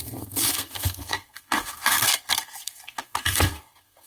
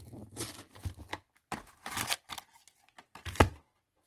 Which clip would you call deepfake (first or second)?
first